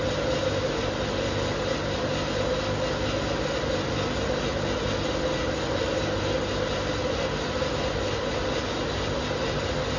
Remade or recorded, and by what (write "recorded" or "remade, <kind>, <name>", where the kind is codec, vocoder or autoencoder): recorded